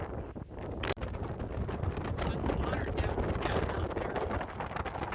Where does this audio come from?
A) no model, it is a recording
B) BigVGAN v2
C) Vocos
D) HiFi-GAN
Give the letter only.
A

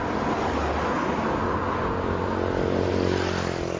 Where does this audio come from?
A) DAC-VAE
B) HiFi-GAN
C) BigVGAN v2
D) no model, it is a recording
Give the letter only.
D